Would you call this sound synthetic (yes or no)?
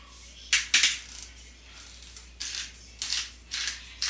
no